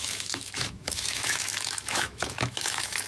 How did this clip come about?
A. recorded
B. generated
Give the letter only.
B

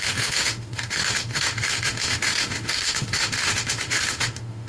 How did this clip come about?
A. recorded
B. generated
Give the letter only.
B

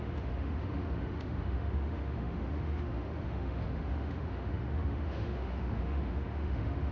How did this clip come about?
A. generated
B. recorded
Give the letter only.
A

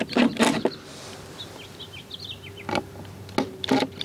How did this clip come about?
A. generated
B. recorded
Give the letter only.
B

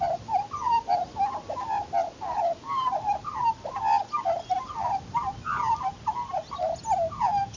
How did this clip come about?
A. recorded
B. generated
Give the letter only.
A